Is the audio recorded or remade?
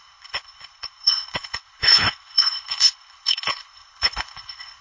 remade